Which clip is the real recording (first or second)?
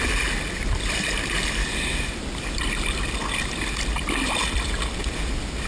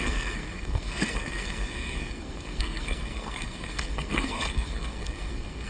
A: first